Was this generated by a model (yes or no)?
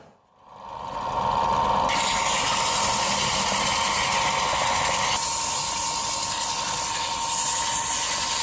no